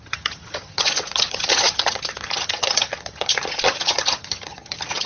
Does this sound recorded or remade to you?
remade